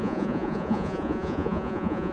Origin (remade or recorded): remade